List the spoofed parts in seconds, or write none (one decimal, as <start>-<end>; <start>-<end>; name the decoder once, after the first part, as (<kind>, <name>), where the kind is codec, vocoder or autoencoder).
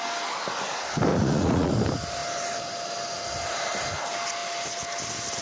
1.1-1.7 (vocoder, Vocos)